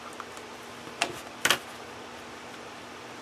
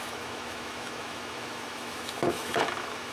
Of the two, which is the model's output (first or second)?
second